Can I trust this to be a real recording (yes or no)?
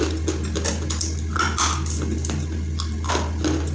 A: yes